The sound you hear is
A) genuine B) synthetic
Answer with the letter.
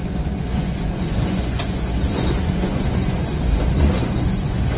B